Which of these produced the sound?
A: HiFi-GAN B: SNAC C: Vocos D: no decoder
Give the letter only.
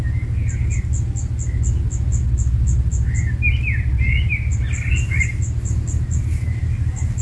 D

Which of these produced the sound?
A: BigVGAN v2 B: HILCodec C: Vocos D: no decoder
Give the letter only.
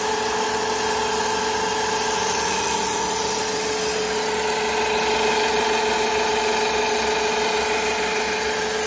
D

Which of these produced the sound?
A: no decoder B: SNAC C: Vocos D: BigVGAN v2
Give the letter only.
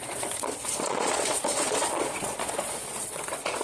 C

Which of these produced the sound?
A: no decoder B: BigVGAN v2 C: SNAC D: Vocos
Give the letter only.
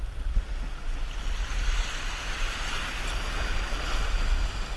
A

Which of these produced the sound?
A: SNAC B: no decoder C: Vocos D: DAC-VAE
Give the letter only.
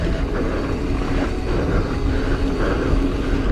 B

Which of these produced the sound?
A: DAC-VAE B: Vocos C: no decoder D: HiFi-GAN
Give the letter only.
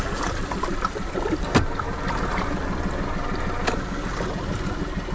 C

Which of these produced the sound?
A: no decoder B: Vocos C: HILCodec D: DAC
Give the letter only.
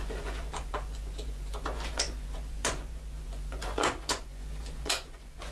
B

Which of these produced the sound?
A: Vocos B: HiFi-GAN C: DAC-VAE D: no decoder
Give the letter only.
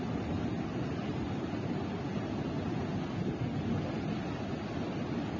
D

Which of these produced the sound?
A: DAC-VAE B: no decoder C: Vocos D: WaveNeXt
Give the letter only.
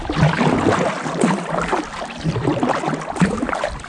B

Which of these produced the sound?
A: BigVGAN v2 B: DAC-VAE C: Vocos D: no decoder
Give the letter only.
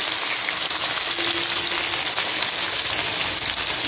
D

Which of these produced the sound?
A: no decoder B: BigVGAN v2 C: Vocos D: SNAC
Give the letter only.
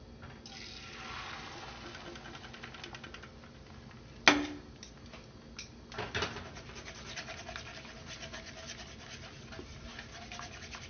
A